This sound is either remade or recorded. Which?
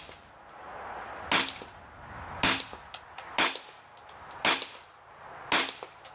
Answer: recorded